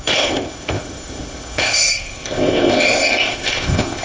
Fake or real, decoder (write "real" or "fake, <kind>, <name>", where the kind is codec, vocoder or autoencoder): fake, codec, ZipCodec